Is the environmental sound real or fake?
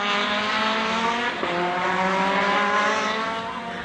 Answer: real